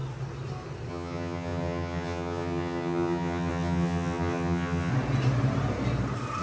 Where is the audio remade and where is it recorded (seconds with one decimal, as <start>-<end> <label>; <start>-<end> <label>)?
0.0-0.9 recorded; 0.9-4.9 remade; 4.9-6.4 recorded